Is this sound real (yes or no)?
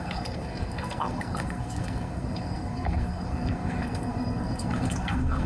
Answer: no